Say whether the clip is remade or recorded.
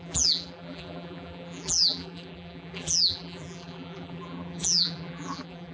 remade